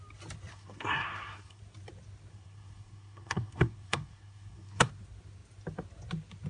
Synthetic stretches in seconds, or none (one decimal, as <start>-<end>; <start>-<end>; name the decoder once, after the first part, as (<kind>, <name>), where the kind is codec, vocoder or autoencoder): 0.5-1.6 (codec, SNAC); 2.3-4.9